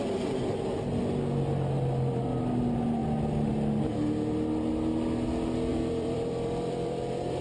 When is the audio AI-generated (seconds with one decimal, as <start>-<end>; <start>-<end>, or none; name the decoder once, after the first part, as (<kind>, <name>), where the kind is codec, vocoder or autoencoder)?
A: 5.7-7.0 (vocoder, BigVGAN v2)